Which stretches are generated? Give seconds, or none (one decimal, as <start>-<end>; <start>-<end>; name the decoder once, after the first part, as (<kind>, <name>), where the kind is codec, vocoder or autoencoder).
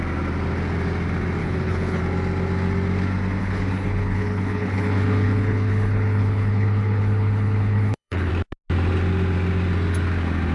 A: 1.4-2.0 (codec, HILCodec); 3.4-8.3